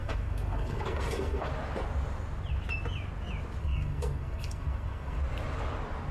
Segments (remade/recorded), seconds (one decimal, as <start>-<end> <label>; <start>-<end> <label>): 0.0-1.5 remade; 1.5-3.6 recorded; 3.6-5.2 remade; 5.2-6.1 recorded